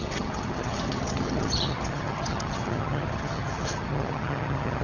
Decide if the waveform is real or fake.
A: fake